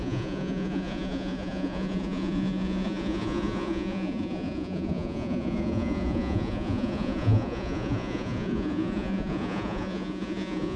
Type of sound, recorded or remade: remade